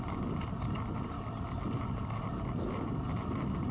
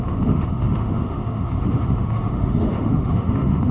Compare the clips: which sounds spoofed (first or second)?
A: second